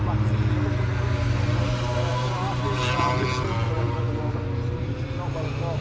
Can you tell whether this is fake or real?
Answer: real